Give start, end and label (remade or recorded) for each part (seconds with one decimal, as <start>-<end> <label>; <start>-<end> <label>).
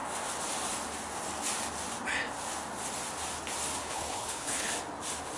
0.0-3.8 recorded; 3.8-4.7 remade; 4.7-5.4 recorded